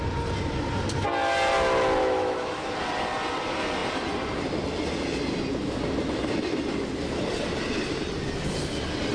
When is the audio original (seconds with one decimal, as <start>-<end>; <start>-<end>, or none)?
0.0-2.0; 2.7-9.1